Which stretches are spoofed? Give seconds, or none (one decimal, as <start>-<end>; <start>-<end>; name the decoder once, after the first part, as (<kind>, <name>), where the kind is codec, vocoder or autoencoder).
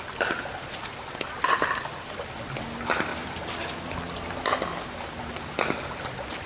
3.1-3.7 (vocoder, BigVGAN v2)